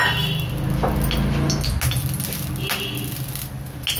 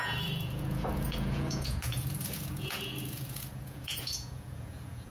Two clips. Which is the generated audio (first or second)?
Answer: second